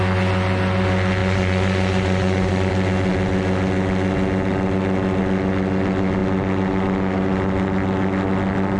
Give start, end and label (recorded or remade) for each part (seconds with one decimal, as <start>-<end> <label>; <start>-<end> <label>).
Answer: 0.0-1.2 recorded; 1.2-2.7 remade; 2.7-8.8 recorded